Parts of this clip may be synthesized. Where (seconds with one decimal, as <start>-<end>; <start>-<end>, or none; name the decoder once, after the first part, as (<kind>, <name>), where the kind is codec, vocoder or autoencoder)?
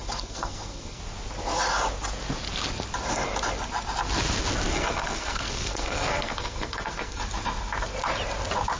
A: 0.0-1.0 (codec, SNAC); 4.7-7.2